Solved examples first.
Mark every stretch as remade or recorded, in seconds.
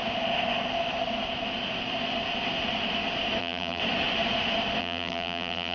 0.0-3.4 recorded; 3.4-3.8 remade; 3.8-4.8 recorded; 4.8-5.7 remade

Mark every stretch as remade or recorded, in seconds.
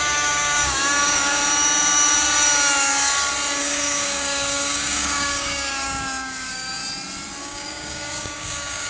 0.0-1.4 remade; 1.4-3.6 recorded; 3.6-6.8 remade; 6.8-7.4 recorded; 7.4-8.9 remade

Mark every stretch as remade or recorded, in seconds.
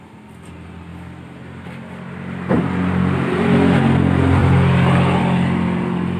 0.0-6.2 recorded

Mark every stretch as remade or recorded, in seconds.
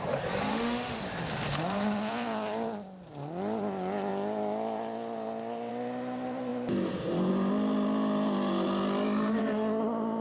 0.0-0.5 recorded; 0.5-1.0 remade; 1.0-10.2 recorded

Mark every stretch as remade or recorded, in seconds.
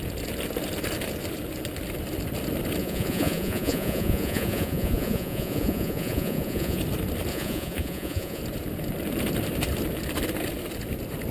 0.0-2.8 recorded; 2.8-6.8 remade; 6.8-7.3 recorded; 7.3-8.4 remade; 8.4-11.3 recorded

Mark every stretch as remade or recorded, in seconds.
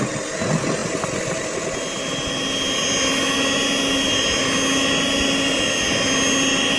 0.0-6.8 recorded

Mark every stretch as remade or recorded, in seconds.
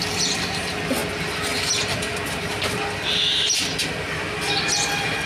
0.0-5.3 recorded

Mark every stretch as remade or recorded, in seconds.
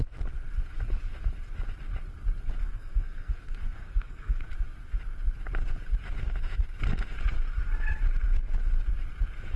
0.0-2.6 recorded; 2.6-4.5 remade; 4.5-9.6 recorded